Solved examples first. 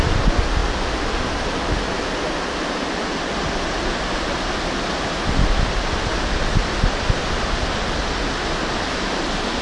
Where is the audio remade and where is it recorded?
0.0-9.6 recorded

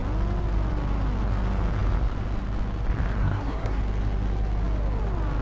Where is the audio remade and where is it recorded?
0.0-3.2 recorded; 3.2-3.8 remade; 3.8-5.4 recorded

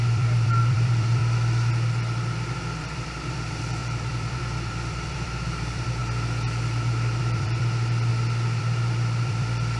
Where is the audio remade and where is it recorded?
0.0-1.2 remade; 1.2-2.6 recorded; 2.6-6.0 remade; 6.0-7.2 recorded; 7.2-8.1 remade; 8.1-8.6 recorded; 8.6-9.8 remade

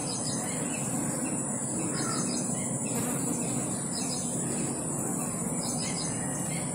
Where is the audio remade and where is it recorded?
0.0-6.7 recorded

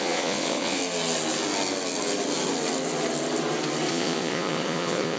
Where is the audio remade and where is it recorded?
0.0-0.8 remade; 0.8-3.9 recorded; 3.9-5.2 remade